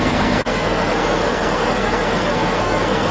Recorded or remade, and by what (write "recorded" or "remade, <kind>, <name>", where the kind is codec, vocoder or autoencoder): remade, codec, SNAC